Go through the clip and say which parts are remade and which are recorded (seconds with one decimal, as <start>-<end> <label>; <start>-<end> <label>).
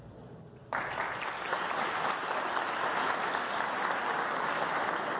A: 0.0-5.2 recorded